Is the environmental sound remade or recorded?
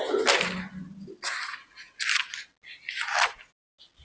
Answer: recorded